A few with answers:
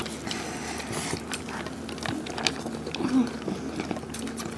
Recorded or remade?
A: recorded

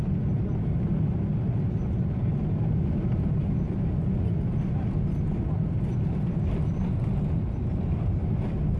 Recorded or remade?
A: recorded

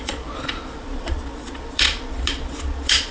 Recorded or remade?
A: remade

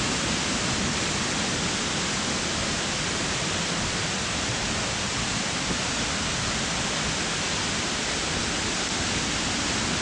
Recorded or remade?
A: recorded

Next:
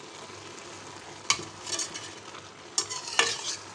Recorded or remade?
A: recorded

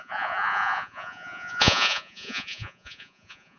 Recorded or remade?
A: remade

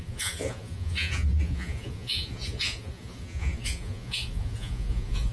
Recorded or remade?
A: remade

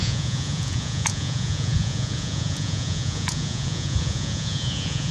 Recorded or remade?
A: remade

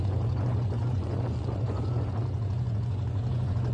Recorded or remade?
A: remade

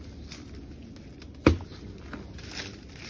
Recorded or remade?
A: recorded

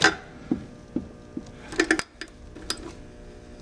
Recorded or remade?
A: recorded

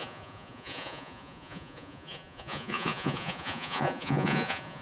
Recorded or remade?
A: remade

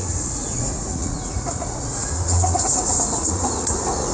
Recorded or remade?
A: remade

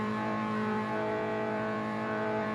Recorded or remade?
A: remade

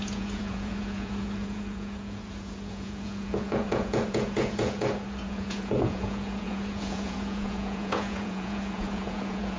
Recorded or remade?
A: remade